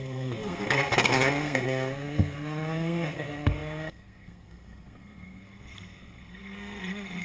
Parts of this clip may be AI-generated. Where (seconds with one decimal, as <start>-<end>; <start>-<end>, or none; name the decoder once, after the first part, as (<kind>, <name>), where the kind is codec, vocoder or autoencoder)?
0.0-7.2 (codec, SNAC)

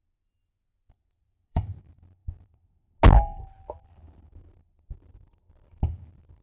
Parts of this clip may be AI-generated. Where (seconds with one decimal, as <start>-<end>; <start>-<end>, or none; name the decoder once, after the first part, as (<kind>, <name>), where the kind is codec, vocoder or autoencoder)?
0.4-1.8 (vocoder, BigVGAN v2)

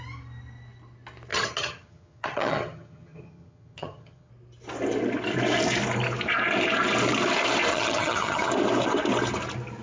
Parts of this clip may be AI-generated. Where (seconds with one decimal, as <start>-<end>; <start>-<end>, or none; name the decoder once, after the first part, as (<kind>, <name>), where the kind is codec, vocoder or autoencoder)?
1.3-4.3 (vocoder, HiFi-GAN); 7.7-8.5

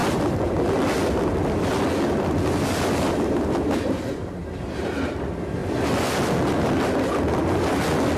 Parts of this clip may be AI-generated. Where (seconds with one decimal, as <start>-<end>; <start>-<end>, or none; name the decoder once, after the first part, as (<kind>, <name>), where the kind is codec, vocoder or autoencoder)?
none

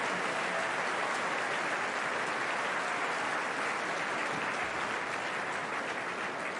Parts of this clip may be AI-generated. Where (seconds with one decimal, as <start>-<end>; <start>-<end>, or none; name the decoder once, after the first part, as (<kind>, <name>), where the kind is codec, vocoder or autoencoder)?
none

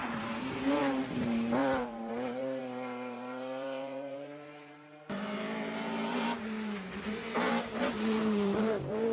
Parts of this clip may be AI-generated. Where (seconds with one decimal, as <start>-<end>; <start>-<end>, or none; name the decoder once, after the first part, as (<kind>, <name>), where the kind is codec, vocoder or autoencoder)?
0.0-9.1 (vocoder, BigVGAN v2)